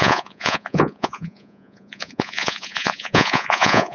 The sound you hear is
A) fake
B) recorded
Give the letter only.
A